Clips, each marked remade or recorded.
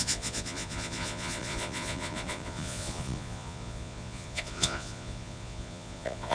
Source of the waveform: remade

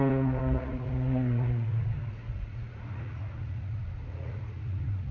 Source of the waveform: remade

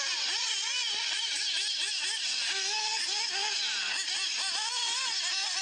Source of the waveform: recorded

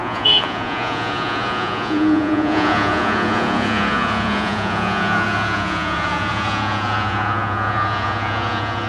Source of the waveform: remade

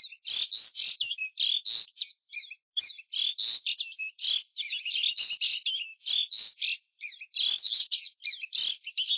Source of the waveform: recorded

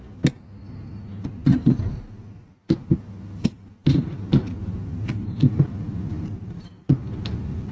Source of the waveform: recorded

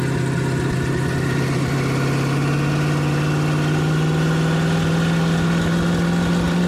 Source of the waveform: recorded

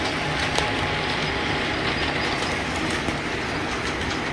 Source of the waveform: recorded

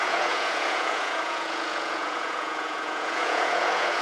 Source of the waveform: remade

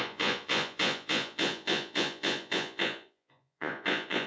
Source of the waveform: remade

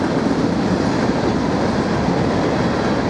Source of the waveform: recorded